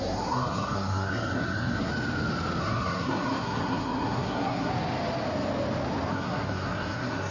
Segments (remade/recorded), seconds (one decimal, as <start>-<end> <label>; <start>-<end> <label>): 0.0-1.9 remade; 1.9-2.6 recorded; 2.6-4.7 remade; 4.7-6.1 recorded; 6.1-7.3 remade